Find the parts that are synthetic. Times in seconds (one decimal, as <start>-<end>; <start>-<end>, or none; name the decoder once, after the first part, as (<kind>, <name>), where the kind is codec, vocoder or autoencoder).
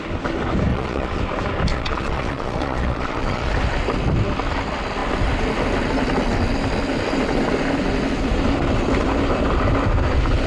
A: 0.7-1.2 (vocoder, Vocos); 1.7-3.5